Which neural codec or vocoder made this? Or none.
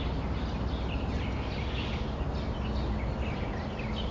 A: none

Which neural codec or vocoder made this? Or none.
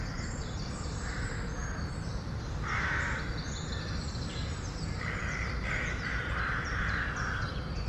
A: vocoder, BigVGAN v2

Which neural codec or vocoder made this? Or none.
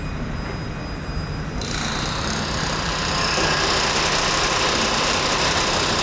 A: none